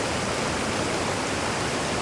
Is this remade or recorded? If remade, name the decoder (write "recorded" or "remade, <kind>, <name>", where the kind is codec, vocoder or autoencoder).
recorded